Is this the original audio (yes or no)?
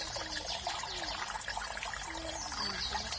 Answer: yes